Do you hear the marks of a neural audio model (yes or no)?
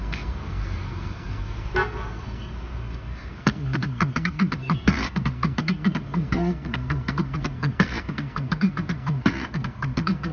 yes